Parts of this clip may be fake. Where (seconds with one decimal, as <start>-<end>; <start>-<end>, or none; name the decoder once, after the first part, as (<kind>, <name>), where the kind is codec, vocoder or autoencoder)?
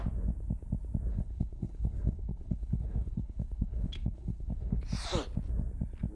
1.1-4.8 (codec, HILCodec)